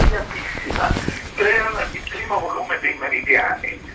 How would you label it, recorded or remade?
remade